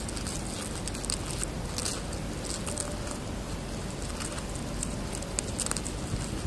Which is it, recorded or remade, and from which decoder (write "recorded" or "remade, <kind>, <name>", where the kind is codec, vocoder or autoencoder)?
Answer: recorded